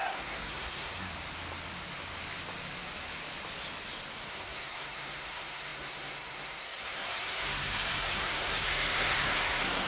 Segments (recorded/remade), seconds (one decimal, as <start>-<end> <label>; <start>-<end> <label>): 0.0-1.1 remade; 1.1-4.3 recorded; 4.3-9.9 remade

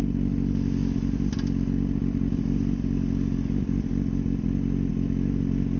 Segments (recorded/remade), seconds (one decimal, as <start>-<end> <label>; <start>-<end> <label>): 0.0-5.8 recorded

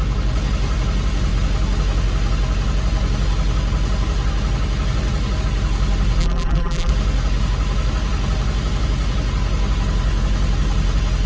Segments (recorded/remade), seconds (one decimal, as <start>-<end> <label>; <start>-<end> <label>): 0.0-6.2 recorded; 6.2-6.9 remade; 6.9-11.3 recorded

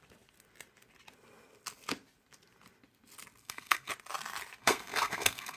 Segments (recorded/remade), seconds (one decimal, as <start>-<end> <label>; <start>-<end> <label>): 0.0-3.4 recorded; 3.4-3.9 remade; 3.9-4.6 recorded; 4.6-5.6 remade

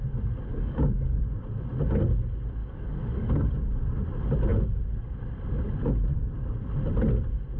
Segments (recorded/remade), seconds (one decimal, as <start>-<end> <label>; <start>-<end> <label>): 0.0-0.5 recorded; 0.5-1.2 remade; 1.2-2.6 recorded; 2.6-3.5 remade; 3.5-7.6 recorded